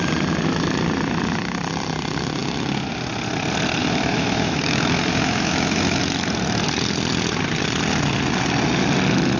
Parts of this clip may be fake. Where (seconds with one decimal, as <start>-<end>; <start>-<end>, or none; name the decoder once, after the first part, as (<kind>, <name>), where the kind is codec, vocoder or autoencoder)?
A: 3.8-6.0 (autoencoder, DAC-VAE)